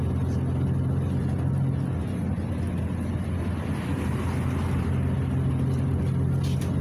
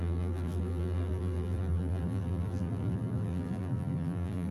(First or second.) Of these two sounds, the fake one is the second